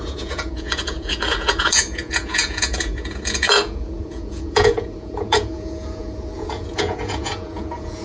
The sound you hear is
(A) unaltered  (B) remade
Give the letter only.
B